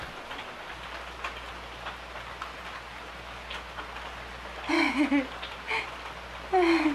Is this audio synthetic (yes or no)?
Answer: no